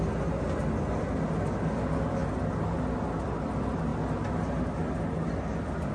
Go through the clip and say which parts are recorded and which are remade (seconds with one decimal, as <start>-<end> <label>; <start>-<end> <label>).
0.0-5.9 recorded